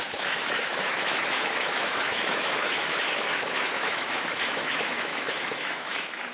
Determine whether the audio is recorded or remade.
remade